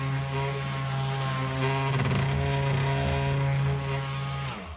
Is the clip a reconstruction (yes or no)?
no